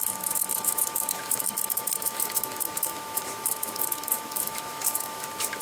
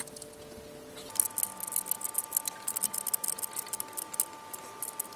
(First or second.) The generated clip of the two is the first